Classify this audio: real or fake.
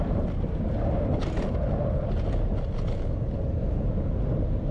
real